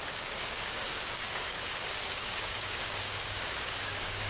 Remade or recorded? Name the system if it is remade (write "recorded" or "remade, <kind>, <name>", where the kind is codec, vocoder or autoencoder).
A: remade, codec, DAC